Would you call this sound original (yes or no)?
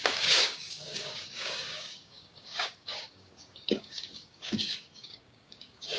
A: no